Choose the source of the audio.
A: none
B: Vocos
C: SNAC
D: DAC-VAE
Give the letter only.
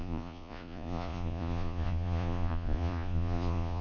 B